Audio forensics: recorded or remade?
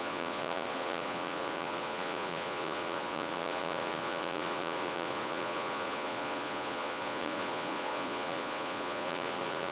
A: remade